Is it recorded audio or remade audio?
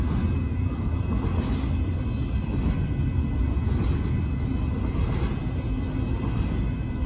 recorded